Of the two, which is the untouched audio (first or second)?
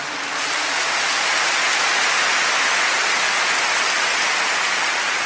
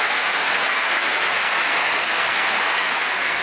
first